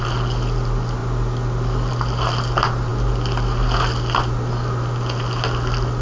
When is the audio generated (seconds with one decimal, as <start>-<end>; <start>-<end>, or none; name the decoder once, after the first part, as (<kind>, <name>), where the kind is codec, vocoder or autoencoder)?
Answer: none

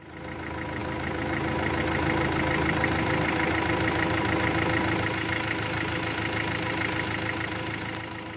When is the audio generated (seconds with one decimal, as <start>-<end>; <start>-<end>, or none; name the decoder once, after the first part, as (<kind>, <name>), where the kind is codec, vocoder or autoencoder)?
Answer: none

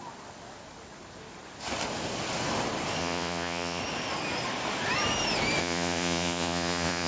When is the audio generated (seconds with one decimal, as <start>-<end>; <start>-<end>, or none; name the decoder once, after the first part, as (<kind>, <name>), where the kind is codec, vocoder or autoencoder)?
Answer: 3.0-3.8 (vocoder, Vocos); 5.6-7.1

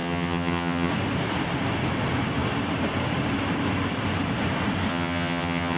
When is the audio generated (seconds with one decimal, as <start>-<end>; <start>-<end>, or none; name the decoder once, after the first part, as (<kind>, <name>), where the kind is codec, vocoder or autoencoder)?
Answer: 0.0-0.9 (vocoder, HiFi-GAN); 4.9-5.8

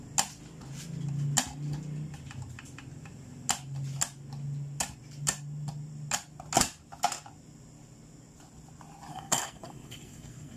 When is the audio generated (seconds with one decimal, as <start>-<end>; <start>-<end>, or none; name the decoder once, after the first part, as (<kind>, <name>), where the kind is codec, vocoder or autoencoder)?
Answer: 9.1-10.6 (codec, SNAC)